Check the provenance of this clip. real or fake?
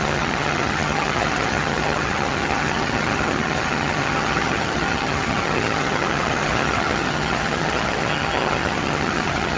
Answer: fake